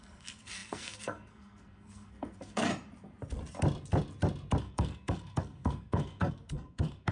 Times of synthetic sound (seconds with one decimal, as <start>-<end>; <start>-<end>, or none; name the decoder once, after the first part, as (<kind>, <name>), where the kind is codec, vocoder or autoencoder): 0.0-2.7 (codec, SNAC); 4.6-7.1